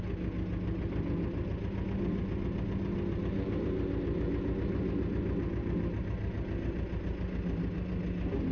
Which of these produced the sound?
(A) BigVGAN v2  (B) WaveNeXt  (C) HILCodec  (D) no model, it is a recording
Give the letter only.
D